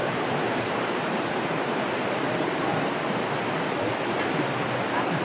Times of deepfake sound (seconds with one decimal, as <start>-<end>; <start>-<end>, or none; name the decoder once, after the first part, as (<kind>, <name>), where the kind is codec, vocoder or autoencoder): 0.0-2.8 (vocoder, BigVGAN v2)